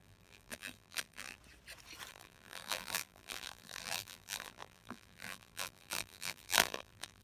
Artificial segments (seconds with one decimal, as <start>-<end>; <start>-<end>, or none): 0.0-1.4; 2.1-7.2